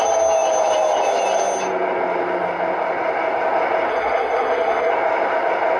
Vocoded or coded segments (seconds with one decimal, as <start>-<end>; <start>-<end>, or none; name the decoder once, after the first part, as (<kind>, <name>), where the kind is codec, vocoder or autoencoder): 3.9-4.9 (codec, SNAC)